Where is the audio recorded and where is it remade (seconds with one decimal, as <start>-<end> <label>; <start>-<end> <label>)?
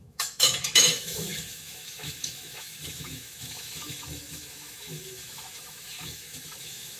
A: 0.0-7.0 remade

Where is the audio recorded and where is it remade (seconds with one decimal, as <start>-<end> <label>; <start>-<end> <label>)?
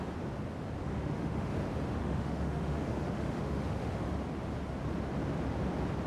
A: 0.0-0.8 recorded; 0.8-1.5 remade; 1.5-2.0 recorded; 2.0-3.9 remade; 3.9-6.1 recorded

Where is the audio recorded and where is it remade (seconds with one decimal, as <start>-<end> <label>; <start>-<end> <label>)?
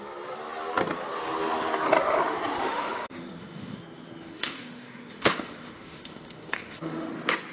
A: 0.0-2.6 recorded; 2.6-7.1 remade; 7.1-7.5 recorded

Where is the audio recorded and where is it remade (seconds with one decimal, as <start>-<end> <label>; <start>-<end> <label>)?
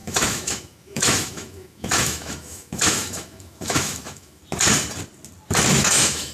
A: 0.0-4.4 remade; 4.4-5.8 recorded; 5.8-6.3 remade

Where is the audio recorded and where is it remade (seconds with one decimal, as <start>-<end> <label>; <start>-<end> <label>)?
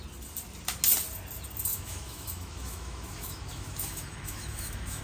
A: 0.0-1.7 recorded; 1.7-5.0 remade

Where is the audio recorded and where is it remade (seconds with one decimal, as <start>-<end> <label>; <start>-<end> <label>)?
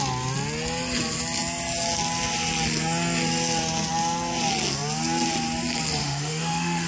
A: 0.0-6.0 recorded; 6.0-6.9 remade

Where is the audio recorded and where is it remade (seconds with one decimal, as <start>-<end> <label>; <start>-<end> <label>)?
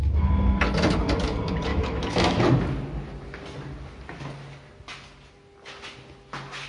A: 0.0-1.7 recorded; 1.7-2.4 remade; 2.4-6.7 recorded